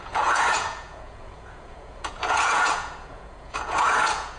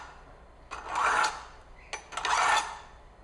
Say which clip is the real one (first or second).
second